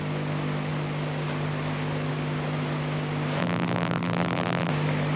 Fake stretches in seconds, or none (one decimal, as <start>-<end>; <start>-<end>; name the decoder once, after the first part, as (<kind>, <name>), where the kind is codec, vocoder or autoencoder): 3.4-4.7 (vocoder, BigVGAN v2)